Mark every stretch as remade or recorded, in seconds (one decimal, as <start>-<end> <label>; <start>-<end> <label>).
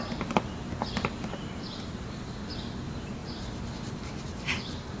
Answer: 0.0-5.0 recorded